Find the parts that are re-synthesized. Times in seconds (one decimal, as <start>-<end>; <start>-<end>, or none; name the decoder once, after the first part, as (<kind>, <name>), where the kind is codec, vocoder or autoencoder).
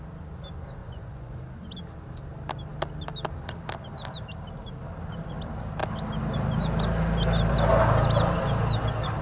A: 0.8-1.4 (vocoder, Vocos)